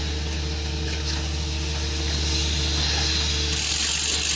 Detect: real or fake real